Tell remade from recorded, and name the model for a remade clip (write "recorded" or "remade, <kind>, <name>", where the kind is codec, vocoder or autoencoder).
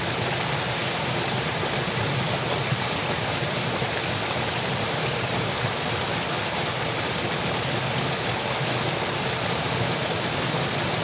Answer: recorded